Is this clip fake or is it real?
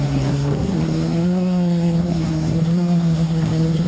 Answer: fake